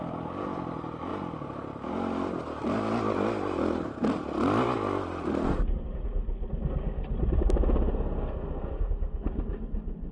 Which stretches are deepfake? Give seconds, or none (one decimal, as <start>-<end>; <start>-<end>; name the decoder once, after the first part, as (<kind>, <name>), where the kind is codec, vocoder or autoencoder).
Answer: none